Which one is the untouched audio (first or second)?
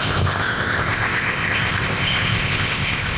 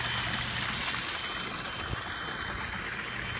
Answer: second